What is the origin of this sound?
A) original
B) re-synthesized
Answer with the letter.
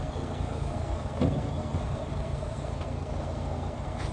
B